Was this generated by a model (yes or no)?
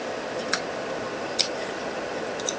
no